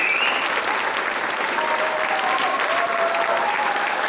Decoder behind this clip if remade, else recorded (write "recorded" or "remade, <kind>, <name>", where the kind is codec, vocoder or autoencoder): recorded